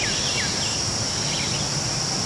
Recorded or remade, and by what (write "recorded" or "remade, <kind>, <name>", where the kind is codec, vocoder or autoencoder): recorded